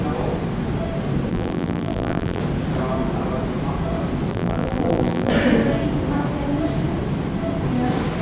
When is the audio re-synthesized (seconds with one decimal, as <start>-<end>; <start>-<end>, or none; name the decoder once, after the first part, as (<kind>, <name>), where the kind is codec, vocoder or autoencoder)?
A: 1.3-2.4 (vocoder, BigVGAN v2); 4.3-5.3